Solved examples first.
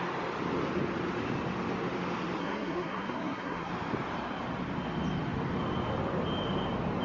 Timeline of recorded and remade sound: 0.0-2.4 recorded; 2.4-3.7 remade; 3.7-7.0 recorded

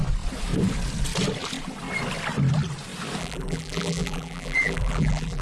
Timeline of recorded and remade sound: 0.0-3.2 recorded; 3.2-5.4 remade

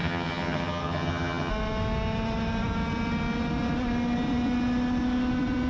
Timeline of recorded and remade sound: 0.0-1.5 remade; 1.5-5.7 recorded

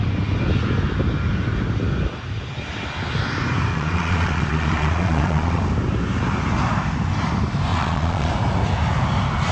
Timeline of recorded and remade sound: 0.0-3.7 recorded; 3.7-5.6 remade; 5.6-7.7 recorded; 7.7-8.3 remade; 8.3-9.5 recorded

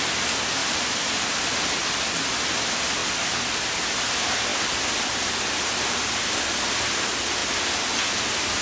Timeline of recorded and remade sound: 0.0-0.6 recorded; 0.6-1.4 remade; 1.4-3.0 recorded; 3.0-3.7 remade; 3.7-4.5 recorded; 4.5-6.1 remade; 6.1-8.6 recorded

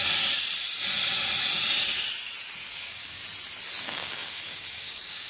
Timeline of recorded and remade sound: 0.0-2.7 recorded; 2.7-3.2 remade; 3.2-3.8 recorded; 3.8-5.3 remade